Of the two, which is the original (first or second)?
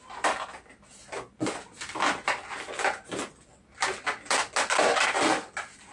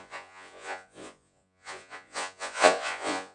first